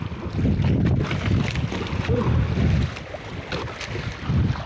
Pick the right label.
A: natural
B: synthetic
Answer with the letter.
A